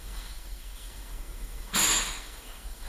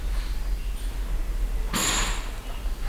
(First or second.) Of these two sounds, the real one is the second